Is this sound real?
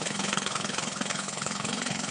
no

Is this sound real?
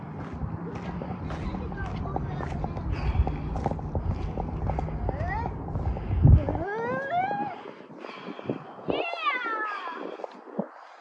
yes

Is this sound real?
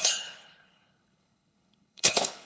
no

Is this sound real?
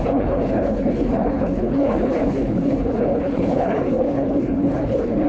no